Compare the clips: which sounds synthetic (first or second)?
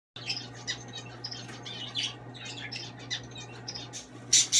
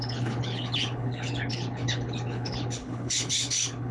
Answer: second